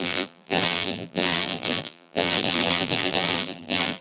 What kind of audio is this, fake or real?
fake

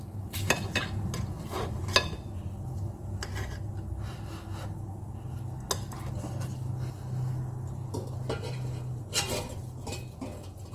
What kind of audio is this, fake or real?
real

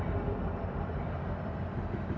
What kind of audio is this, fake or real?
fake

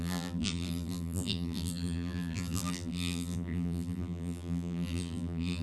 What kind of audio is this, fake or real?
fake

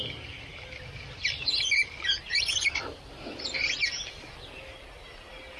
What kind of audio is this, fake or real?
real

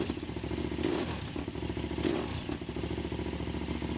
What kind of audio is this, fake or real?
real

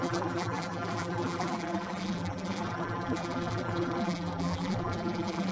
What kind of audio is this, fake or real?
fake